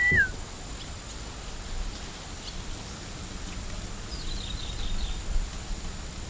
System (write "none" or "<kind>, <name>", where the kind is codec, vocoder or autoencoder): none